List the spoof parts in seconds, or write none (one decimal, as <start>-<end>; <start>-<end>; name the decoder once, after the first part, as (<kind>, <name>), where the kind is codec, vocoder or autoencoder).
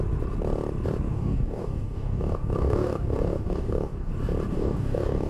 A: 1.1-4.1 (codec, DAC); 4.5-5.3